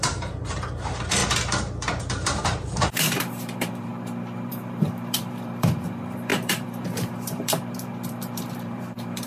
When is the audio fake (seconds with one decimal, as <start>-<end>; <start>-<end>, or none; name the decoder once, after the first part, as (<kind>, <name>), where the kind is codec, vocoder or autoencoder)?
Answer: 0.0-1.2 (vocoder, BigVGAN v2); 2.1-3.9; 4.5-9.3